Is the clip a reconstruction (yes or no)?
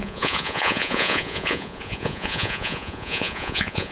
yes